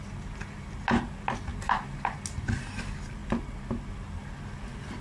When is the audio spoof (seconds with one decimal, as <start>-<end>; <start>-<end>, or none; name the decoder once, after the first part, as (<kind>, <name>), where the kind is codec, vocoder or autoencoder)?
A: none